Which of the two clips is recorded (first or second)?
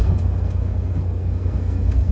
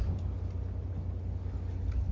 second